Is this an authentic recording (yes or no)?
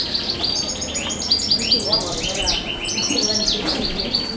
yes